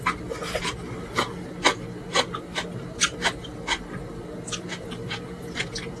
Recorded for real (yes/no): yes